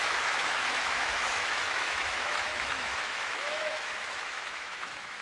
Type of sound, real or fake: fake